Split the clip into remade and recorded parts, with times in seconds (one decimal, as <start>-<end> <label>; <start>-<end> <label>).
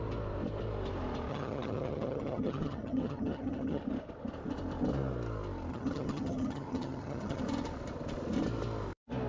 0.0-1.3 recorded; 1.3-3.8 remade; 3.8-5.7 recorded; 5.7-7.4 remade; 7.4-9.3 recorded